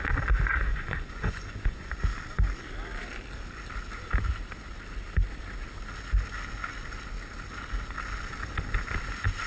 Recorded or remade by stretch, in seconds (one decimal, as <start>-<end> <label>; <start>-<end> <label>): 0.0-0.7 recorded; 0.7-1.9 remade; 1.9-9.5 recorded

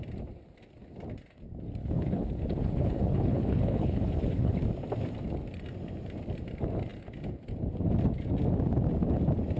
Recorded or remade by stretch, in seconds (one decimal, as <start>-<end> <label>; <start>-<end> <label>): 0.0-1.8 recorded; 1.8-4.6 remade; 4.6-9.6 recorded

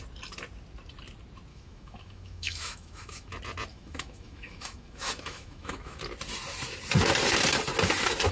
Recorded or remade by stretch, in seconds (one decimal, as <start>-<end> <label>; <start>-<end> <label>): 0.0-1.5 recorded; 1.5-3.3 remade; 3.3-3.7 recorded; 3.7-6.0 remade; 6.0-8.3 recorded

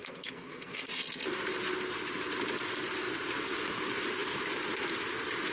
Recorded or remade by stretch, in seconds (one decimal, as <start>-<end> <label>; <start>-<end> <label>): 0.0-0.9 remade; 0.9-5.5 recorded

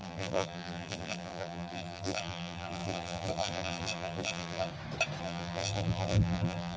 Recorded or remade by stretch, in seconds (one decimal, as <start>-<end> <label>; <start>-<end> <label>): 0.0-4.7 remade; 4.7-5.2 recorded; 5.2-6.8 remade

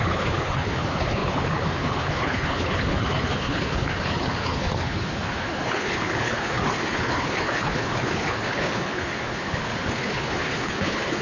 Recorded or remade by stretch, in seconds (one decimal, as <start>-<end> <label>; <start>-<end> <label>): 0.0-11.2 remade

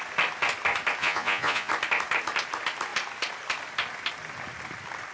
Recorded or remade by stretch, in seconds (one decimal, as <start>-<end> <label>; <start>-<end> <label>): 0.0-1.0 recorded; 1.0-1.7 remade; 1.7-5.1 recorded

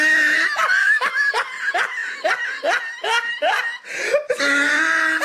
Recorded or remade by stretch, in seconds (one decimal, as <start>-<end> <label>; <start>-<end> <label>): 0.0-0.8 recorded; 0.8-1.3 remade; 1.3-5.2 recorded